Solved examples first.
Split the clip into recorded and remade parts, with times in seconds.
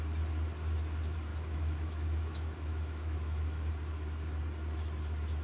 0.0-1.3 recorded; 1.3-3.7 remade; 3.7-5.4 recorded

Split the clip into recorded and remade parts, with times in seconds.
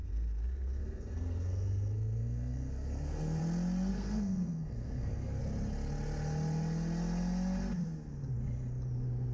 0.0-3.4 remade; 3.4-3.9 recorded; 3.9-5.4 remade; 5.4-9.3 recorded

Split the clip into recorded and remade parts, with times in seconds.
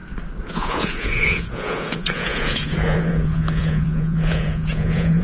0.0-0.5 recorded; 0.5-5.2 remade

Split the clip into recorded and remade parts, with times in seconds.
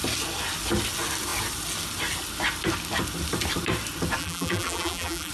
0.0-4.2 recorded; 4.2-5.3 remade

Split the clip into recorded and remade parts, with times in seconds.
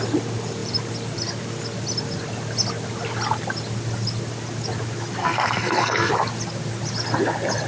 0.0-5.2 recorded; 5.2-6.1 remade; 6.1-7.7 recorded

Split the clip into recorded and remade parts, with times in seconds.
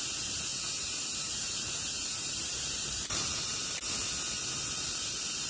0.0-0.5 recorded; 0.5-3.8 remade; 3.8-5.5 recorded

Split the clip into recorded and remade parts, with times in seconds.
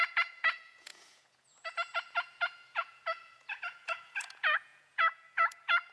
0.0-5.9 remade